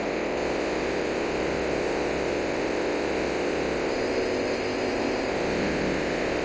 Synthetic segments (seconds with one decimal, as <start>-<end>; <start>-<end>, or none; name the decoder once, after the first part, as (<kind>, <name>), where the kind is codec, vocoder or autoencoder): 3.9-5.3 (codec, ZipCodec)